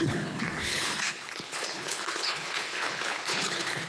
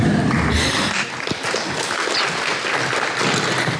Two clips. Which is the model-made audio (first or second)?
first